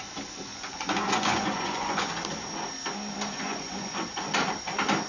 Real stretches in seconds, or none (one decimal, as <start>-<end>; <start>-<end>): 0.0-0.5; 2.1-3.3; 4.2-5.1